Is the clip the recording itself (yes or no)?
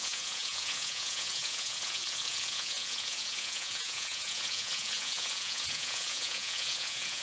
no